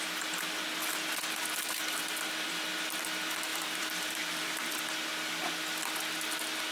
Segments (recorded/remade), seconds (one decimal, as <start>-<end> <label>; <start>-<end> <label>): 0.0-3.5 recorded; 3.5-4.8 remade; 4.8-6.7 recorded

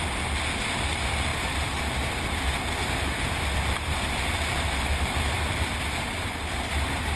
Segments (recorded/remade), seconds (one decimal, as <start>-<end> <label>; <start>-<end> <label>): 0.0-1.3 recorded; 1.3-1.9 remade; 1.9-2.8 recorded; 2.8-5.7 remade; 5.7-7.2 recorded